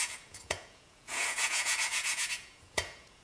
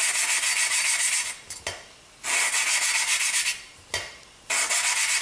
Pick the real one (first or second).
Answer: second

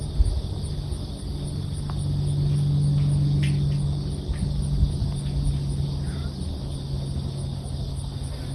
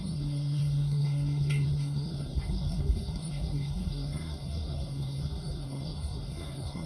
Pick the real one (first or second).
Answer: first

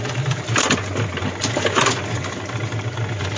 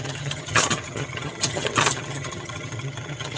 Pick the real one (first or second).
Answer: first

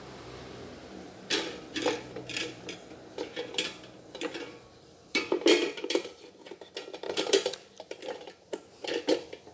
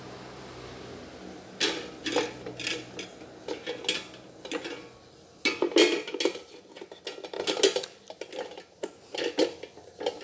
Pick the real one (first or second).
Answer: second